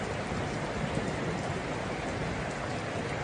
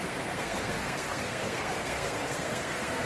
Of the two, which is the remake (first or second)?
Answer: second